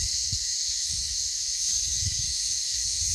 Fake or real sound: fake